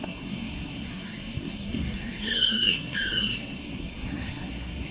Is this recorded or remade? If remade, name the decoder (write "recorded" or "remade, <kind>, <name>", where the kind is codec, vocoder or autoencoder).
remade, codec, SNAC